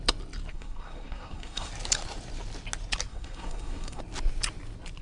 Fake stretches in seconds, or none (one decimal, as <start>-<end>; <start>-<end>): 0.5-1.7; 3.1-4.0

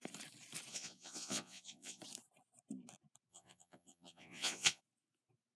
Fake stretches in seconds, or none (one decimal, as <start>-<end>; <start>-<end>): 0.7-2.0; 3.3-4.8

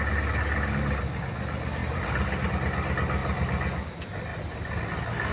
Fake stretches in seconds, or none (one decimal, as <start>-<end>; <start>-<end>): 1.8-2.5; 3.2-3.9